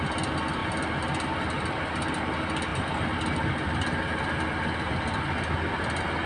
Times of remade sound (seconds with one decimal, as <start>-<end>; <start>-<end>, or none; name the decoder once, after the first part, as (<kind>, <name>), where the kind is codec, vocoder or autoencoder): none